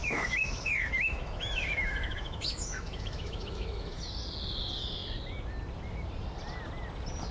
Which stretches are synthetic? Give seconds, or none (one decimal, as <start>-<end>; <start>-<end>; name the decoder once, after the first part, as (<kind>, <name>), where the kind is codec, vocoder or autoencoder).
0.0-4.0 (autoencoder, DAC-VAE)